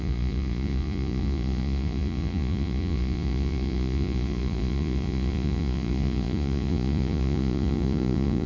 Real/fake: fake